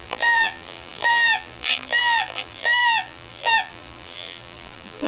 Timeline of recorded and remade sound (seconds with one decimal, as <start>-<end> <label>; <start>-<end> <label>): 0.0-5.1 remade